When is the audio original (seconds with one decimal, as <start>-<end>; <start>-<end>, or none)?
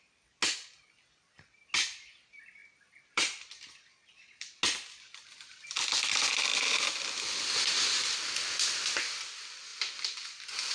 0.0-2.6; 4.6-6.5; 8.3-10.7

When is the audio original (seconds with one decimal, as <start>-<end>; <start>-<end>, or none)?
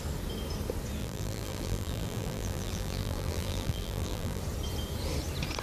0.0-1.0; 4.4-5.6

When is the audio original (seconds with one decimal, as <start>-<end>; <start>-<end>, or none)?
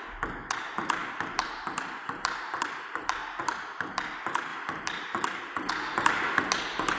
0.0-1.0; 3.4-4.5; 5.7-7.0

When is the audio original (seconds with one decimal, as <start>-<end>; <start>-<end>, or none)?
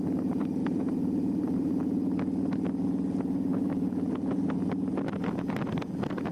0.0-0.6; 1.7-3.5; 4.5-6.3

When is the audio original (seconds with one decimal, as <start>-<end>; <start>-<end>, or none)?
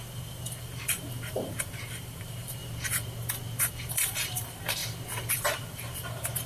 2.6-3.7; 4.8-5.3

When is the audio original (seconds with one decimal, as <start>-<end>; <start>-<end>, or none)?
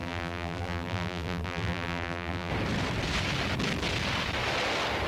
2.5-5.1